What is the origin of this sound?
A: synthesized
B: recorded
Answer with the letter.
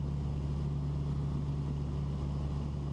B